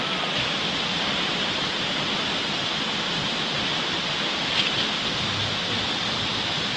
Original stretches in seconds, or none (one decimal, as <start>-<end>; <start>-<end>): 0.0-6.8